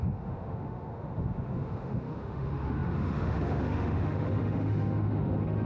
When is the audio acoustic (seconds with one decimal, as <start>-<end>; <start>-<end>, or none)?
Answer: none